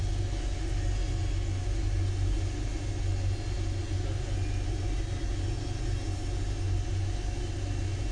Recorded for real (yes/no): yes